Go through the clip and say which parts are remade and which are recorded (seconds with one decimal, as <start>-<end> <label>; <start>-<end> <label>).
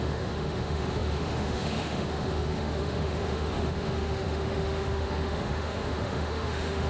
0.0-6.9 remade